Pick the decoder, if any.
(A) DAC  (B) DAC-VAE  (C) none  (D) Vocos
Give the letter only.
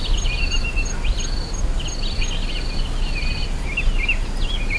C